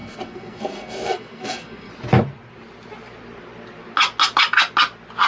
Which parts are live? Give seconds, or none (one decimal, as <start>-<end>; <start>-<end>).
1.9-5.3